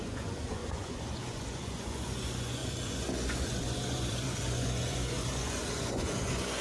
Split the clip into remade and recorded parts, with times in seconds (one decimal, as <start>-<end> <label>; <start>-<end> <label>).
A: 0.0-6.6 remade